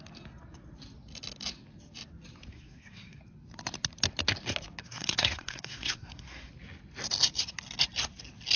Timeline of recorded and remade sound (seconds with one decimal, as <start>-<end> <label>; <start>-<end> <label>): 0.0-2.5 recorded; 2.5-3.2 remade; 3.2-4.8 recorded; 4.8-6.5 remade; 6.5-8.6 recorded